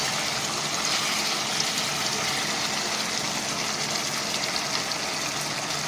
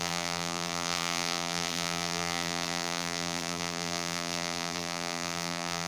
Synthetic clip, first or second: second